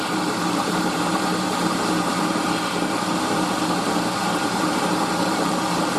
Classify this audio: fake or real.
fake